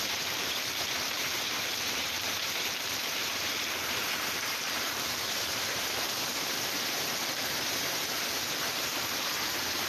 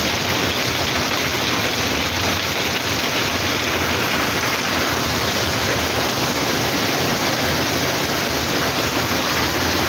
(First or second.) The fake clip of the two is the first